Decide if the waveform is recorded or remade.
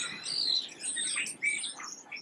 recorded